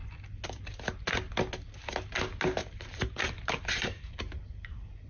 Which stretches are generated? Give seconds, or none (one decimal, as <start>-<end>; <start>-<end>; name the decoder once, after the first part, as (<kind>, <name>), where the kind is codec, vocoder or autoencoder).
2.6-4.2 (vocoder, BigVGAN v2)